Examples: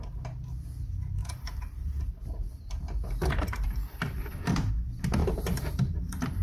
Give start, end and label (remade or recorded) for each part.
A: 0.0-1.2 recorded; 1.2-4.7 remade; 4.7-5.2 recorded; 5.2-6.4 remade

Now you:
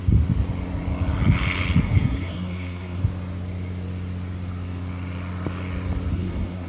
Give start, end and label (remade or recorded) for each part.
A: 0.0-1.8 recorded; 1.8-3.0 remade; 3.0-6.1 recorded; 6.1-6.7 remade

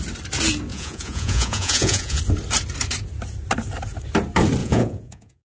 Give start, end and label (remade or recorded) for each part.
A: 0.0-0.7 recorded; 0.7-2.2 remade; 2.2-4.6 recorded; 4.6-5.5 remade

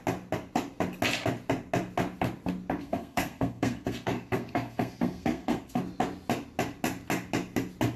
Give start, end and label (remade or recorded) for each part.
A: 0.0-2.8 recorded; 2.8-5.8 remade; 5.8-8.0 recorded

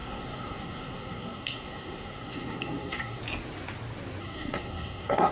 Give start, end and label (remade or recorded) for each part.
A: 0.0-3.2 remade; 3.2-4.2 recorded; 4.2-5.3 remade

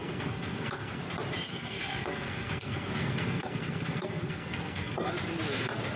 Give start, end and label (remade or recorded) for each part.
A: 0.0-1.0 remade; 1.0-1.5 recorded; 1.5-5.1 remade; 5.1-6.0 recorded

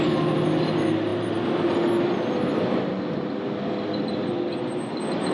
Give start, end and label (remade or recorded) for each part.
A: 0.0-5.3 recorded